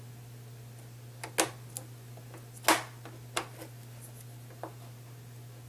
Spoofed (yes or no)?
no